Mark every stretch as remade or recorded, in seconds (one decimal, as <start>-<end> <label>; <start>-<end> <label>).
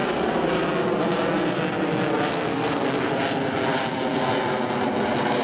0.0-2.3 recorded; 2.3-3.1 remade; 3.1-5.4 recorded